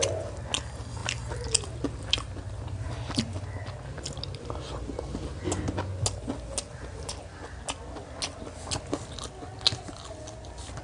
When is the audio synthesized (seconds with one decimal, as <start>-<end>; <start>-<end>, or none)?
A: none

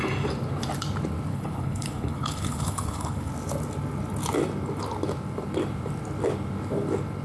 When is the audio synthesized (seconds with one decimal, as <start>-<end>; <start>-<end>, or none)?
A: 1.3-3.3